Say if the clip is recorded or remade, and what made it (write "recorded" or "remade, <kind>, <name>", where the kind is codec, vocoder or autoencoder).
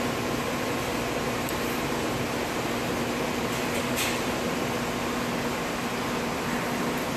recorded